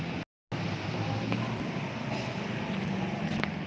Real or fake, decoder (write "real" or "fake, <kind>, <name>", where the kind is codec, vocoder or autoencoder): real